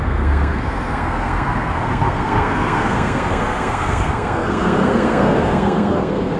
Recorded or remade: remade